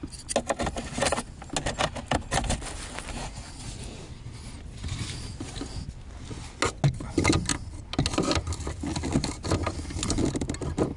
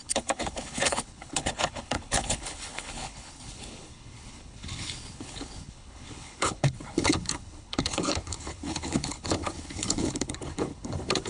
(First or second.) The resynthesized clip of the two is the second